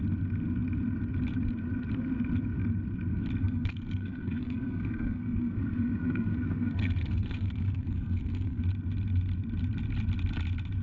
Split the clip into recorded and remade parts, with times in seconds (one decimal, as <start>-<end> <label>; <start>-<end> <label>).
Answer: 0.0-3.4 recorded; 3.4-8.6 remade; 8.6-10.8 recorded